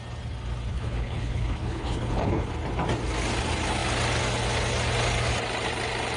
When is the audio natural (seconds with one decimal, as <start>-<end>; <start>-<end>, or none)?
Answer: 0.0-0.7; 2.5-6.2